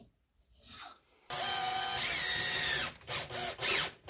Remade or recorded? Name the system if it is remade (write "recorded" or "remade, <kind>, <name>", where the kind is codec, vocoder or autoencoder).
recorded